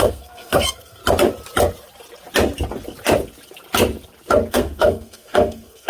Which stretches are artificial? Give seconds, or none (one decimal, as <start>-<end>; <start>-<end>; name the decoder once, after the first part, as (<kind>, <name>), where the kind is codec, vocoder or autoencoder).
0.0-1.0 (codec, SNAC); 4.5-5.9